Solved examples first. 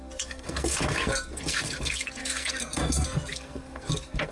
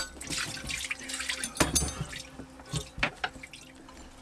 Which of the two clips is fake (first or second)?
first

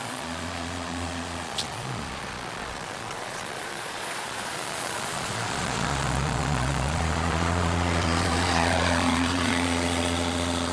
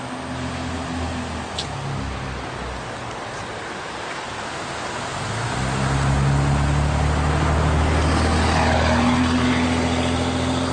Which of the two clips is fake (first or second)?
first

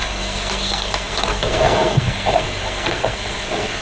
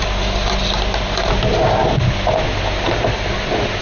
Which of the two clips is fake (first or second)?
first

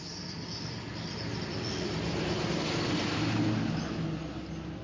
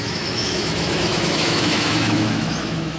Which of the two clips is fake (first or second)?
second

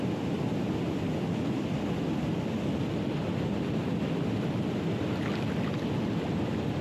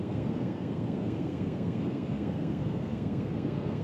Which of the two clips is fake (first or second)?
second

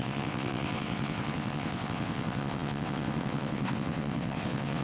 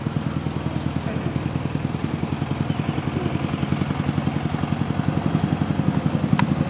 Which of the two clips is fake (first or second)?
first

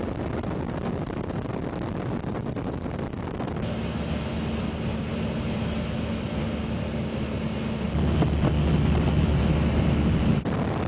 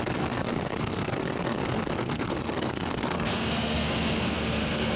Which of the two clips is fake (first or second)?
second